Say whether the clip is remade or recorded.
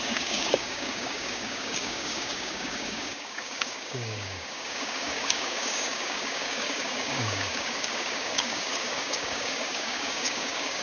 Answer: remade